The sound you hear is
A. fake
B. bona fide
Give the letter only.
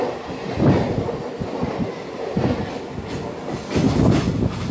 B